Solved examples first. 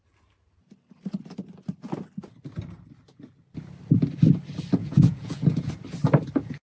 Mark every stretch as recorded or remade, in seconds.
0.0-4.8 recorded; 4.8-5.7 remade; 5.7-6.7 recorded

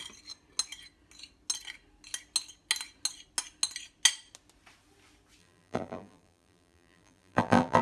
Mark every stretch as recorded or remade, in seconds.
0.0-5.4 recorded; 5.4-7.8 remade

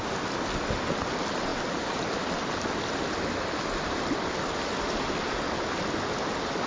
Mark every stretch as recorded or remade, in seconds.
0.0-6.7 recorded